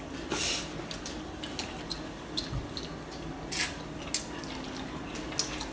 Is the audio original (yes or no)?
yes